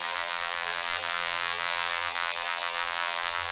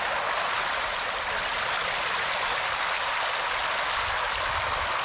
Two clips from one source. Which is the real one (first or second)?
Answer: second